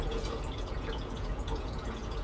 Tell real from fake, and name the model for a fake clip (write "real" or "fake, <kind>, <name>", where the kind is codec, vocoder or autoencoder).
fake, vocoder, Vocos